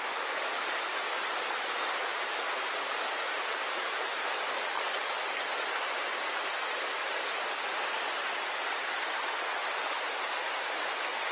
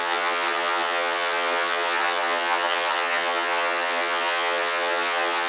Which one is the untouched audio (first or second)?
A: first